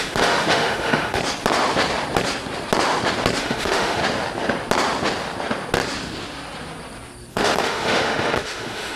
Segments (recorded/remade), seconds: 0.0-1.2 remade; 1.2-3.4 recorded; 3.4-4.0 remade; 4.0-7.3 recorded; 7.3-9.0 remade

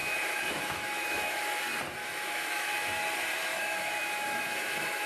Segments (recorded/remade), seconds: 0.0-1.6 remade; 1.6-2.0 recorded; 2.0-2.9 remade; 2.9-3.5 recorded; 3.5-5.1 remade

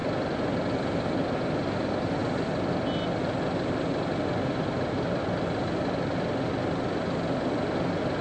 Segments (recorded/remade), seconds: 0.0-8.2 recorded

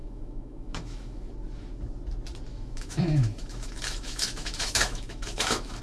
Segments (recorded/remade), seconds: 0.0-1.3 remade; 1.3-2.5 recorded; 2.5-5.8 remade

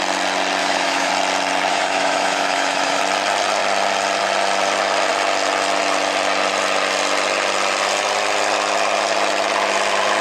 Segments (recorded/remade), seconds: 0.0-0.6 recorded; 0.6-1.1 remade; 1.1-1.7 recorded; 1.7-3.0 remade; 3.0-10.2 recorded

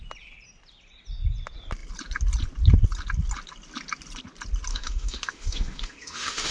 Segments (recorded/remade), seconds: 0.0-4.7 recorded; 4.7-6.5 remade

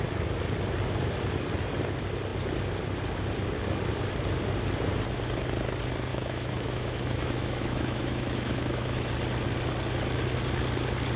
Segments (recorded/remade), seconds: 0.0-6.1 recorded; 6.1-9.1 remade; 9.1-11.2 recorded